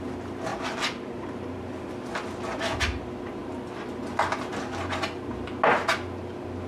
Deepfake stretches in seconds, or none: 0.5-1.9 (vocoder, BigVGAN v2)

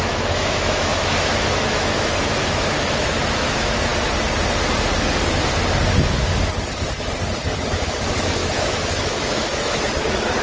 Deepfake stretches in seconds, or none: 0.0-3.9 (autoencoder, DAC-VAE); 7.7-10.4